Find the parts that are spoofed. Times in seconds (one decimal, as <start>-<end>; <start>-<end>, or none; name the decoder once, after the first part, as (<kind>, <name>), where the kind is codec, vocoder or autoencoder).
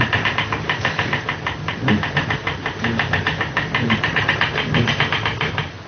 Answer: none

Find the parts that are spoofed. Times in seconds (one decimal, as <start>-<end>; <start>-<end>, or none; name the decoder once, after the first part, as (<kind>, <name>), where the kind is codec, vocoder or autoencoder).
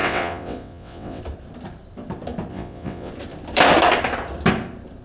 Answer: 0.0-1.2 (vocoder, WaveNeXt); 2.5-3.1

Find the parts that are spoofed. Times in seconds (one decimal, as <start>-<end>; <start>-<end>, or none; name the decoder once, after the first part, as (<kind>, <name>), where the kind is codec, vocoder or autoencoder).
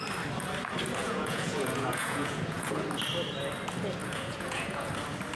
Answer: 1.0-2.8 (vocoder, Vocos); 4.0-4.9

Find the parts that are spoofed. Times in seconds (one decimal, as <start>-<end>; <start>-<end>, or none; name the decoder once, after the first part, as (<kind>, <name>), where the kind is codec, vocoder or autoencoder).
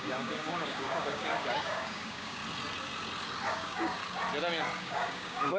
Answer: 0.0-2.4 (codec, DAC); 3.5-4.0; 4.8-5.6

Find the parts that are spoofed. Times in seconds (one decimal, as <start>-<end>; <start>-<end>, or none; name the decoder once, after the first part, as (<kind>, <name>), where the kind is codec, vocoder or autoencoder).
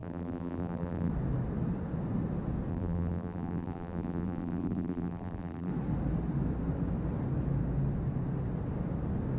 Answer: 0.0-1.1 (vocoder, BigVGAN v2); 2.7-5.7